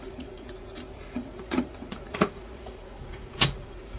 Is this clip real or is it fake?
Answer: fake